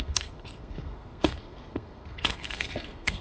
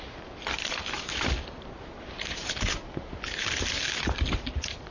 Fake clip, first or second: first